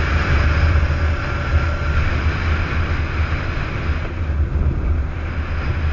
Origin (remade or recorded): recorded